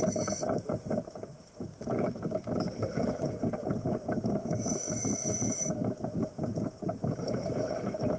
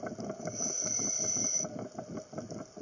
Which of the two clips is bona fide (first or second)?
second